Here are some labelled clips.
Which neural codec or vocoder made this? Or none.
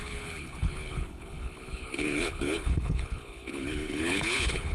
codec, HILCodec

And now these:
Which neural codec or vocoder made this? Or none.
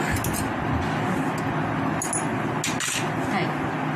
none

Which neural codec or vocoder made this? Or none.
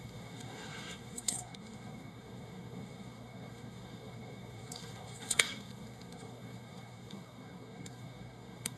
codec, SNAC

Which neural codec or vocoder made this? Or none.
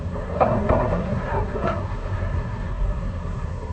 codec, SNAC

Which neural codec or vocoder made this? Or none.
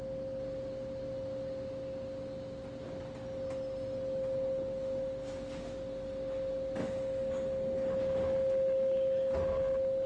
none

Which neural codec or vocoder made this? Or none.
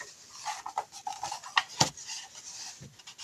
none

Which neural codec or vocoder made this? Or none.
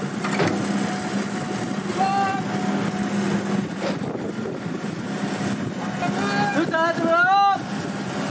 none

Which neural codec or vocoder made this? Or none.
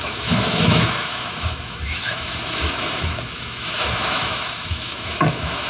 autoencoder, DAC-VAE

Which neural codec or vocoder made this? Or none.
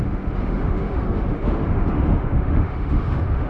autoencoder, DAC-VAE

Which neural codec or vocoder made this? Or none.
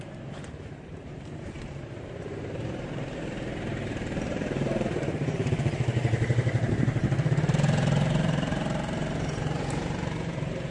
vocoder, BigVGAN v2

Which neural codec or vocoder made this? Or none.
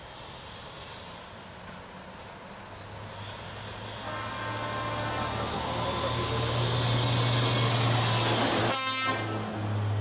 none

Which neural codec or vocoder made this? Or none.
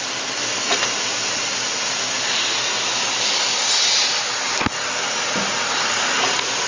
none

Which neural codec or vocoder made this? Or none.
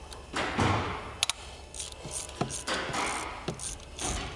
none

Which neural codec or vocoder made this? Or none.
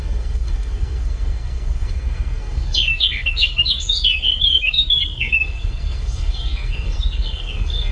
codec, SNAC